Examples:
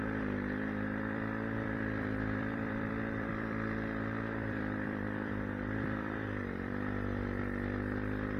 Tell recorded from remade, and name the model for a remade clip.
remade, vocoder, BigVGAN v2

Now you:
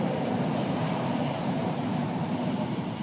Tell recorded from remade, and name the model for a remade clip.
remade, vocoder, BigVGAN v2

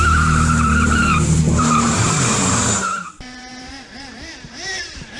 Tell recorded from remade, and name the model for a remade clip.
remade, vocoder, BigVGAN v2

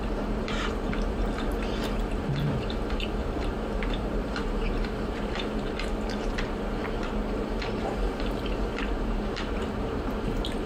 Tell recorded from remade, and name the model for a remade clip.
remade, vocoder, BigVGAN v2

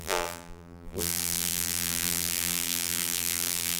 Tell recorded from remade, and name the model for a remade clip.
remade, vocoder, BigVGAN v2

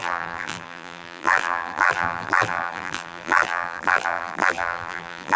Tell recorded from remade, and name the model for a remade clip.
remade, vocoder, BigVGAN v2